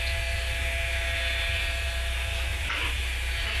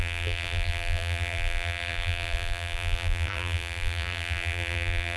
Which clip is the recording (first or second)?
first